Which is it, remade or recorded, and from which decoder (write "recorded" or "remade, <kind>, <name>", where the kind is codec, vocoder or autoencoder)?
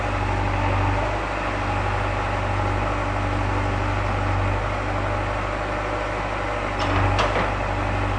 recorded